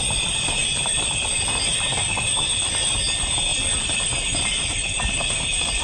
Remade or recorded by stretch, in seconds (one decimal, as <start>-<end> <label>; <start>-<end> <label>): 0.0-5.8 recorded